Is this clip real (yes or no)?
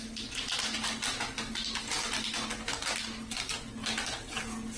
yes